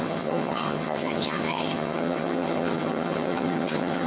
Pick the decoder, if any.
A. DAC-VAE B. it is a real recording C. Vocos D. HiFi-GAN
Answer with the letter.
D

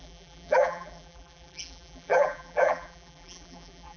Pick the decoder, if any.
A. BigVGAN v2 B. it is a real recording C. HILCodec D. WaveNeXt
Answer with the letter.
A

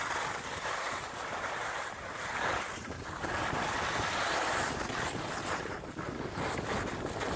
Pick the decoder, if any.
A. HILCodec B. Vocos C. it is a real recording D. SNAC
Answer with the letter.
C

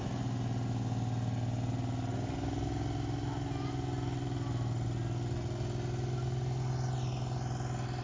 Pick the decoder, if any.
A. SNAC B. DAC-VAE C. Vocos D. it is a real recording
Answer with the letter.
D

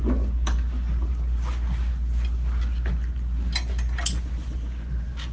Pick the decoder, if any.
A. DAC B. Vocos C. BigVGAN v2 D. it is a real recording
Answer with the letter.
D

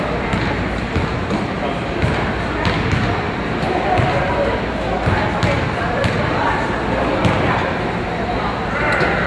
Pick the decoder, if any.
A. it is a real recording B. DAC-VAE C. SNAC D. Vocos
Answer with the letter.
A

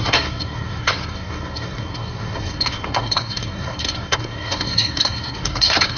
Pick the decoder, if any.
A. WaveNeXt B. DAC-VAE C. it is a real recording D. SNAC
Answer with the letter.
D